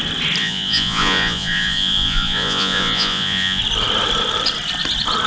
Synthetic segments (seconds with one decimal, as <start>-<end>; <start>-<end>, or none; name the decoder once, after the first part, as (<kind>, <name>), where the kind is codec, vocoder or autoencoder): 0.4-3.6 (vocoder, Vocos)